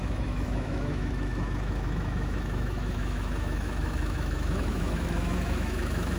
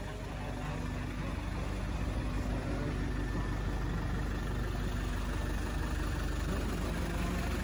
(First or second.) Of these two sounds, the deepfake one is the first